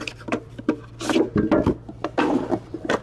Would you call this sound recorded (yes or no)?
no